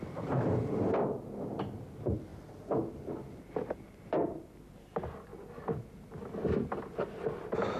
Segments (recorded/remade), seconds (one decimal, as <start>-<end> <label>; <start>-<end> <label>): 0.0-7.8 recorded

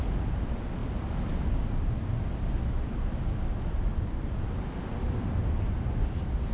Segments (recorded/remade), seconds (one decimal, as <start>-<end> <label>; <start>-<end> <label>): 0.0-6.5 recorded

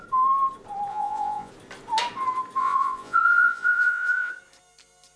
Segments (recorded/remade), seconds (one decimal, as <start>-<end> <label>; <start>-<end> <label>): 0.0-0.9 recorded; 0.9-1.5 remade; 1.5-2.6 recorded; 2.6-4.3 remade; 4.3-5.2 recorded

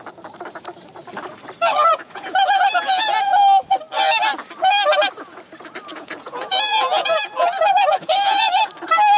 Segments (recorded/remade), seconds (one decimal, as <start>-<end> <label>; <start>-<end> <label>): 0.0-1.9 recorded; 1.9-3.4 remade; 3.4-5.9 recorded; 5.9-8.7 remade; 8.7-9.2 recorded

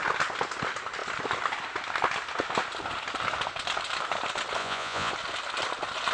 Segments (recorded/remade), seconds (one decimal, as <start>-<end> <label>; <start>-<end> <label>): 0.0-4.6 recorded; 4.6-5.1 remade; 5.1-6.1 recorded

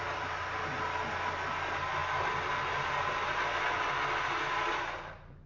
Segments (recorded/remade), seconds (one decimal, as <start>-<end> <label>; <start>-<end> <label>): 0.0-5.5 recorded